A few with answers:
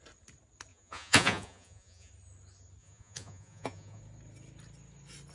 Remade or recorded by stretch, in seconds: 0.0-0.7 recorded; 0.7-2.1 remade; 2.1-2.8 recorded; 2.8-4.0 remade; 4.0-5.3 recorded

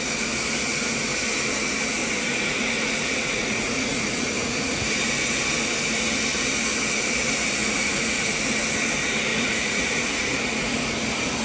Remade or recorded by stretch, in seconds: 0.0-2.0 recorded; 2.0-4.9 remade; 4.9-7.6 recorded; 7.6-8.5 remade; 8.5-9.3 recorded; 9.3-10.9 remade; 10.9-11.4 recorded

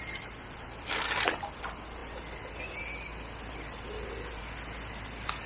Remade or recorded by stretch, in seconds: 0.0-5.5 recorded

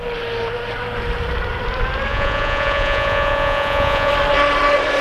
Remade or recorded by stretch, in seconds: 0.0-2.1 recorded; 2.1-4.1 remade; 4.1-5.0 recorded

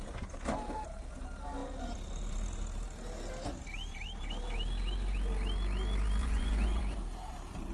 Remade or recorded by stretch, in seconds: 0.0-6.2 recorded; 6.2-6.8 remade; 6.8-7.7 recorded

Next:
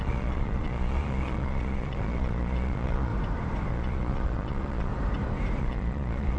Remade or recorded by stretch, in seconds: 0.0-3.1 remade; 3.1-3.7 recorded; 3.7-4.9 remade; 4.9-5.6 recorded; 5.6-6.4 remade

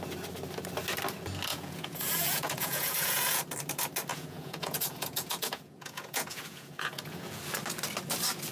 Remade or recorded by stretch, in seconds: 0.0-1.5 recorded; 1.5-3.4 remade; 3.4-4.1 recorded; 4.1-7.4 remade; 7.4-8.5 recorded

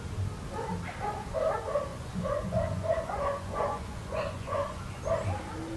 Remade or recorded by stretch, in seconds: 0.0-1.9 recorded; 1.9-5.0 remade; 5.0-5.8 recorded